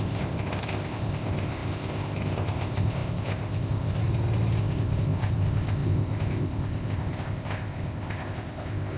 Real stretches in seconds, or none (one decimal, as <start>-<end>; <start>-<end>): 4.0-4.6